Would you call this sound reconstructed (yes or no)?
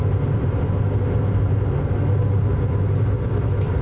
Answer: no